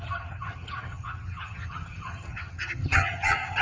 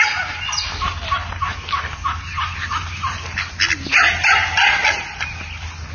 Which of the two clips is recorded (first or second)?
second